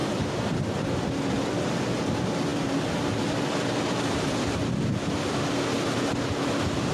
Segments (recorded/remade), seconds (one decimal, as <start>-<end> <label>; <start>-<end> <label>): 0.0-6.9 recorded